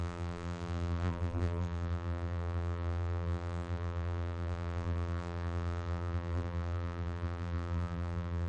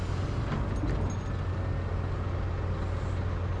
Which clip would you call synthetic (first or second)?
first